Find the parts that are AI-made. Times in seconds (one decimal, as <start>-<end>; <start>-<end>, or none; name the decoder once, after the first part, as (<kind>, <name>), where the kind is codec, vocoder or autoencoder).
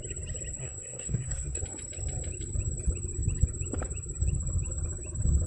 0.6-1.6 (codec, SNAC)